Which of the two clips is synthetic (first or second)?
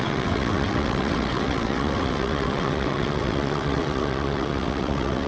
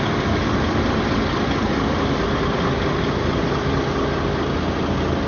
first